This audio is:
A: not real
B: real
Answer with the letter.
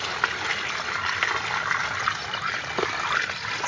B